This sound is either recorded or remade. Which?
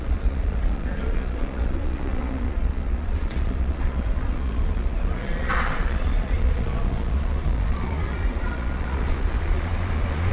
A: remade